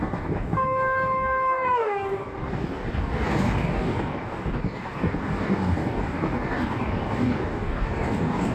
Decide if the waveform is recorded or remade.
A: remade